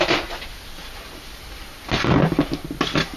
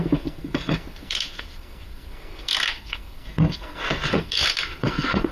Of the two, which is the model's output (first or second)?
second